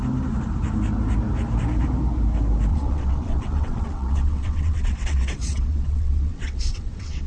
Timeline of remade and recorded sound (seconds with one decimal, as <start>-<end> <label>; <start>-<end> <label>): 0.0-2.7 recorded; 2.7-7.3 remade